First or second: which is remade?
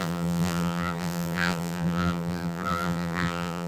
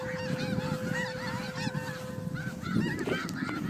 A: first